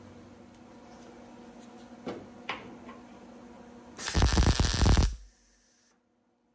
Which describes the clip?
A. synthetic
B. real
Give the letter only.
B